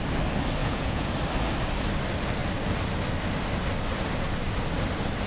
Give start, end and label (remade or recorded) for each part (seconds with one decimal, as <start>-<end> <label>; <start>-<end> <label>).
0.0-0.6 recorded; 0.6-1.1 remade; 1.1-5.3 recorded